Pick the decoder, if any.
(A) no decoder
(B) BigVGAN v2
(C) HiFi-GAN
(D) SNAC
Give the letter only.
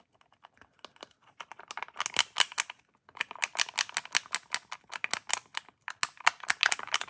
A